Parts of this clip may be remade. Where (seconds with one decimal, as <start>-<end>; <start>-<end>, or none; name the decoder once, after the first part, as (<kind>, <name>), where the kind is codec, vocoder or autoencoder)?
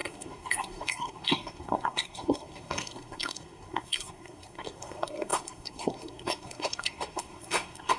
0.0-8.0 (codec, SNAC)